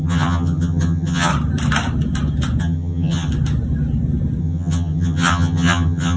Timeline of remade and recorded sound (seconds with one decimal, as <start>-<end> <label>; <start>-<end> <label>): 0.0-1.3 remade; 1.3-2.6 recorded; 2.6-3.3 remade; 3.3-4.4 recorded; 4.4-6.2 remade